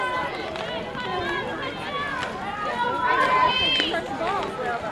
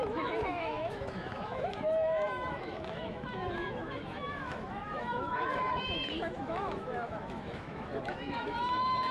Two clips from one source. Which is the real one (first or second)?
first